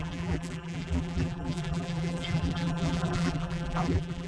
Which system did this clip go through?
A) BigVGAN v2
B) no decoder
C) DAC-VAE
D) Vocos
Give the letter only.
A